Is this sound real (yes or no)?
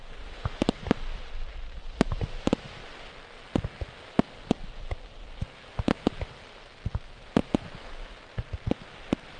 yes